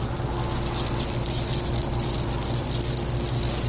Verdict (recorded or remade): recorded